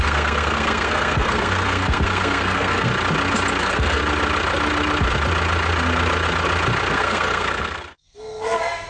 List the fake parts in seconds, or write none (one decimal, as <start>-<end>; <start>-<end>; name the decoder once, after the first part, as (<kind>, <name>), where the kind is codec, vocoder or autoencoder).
0.0-2.9 (codec, SNAC); 3.6-4.0; 6.9-8.9